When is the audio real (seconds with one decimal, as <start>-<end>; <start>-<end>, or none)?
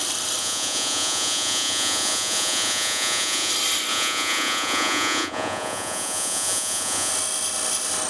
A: 0.0-0.4; 3.5-3.9; 7.1-8.1